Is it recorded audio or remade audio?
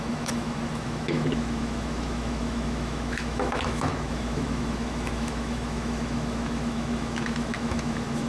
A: remade